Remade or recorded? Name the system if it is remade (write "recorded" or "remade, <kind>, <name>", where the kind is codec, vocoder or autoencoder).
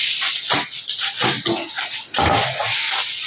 recorded